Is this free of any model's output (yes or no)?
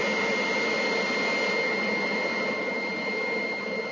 yes